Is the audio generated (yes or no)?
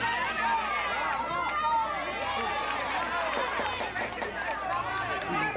no